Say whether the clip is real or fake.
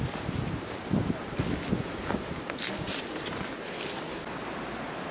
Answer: real